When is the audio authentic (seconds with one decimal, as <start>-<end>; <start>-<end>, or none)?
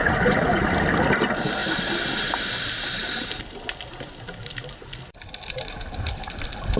0.6-6.8